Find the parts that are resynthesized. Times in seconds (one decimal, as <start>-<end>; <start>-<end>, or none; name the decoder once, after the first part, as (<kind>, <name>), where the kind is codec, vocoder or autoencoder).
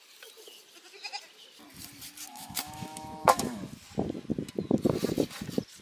2.3-3.6 (autoencoder, DAC-VAE)